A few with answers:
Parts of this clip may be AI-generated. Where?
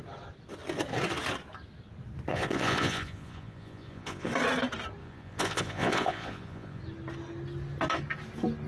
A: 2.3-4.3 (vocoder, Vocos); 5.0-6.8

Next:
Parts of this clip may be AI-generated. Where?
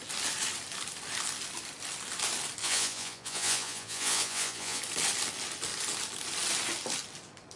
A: 2.6-4.8 (vocoder, Vocos)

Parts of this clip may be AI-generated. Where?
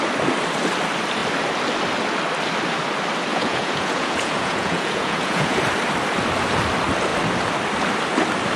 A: 3.3-5.6 (vocoder, Vocos)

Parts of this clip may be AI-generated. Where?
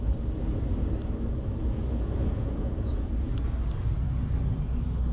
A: 1.6-3.3 (vocoder, Vocos)